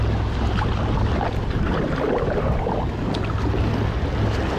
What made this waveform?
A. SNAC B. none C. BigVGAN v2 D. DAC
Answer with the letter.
B